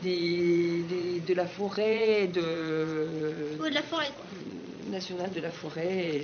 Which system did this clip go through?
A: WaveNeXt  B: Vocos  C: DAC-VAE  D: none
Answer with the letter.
B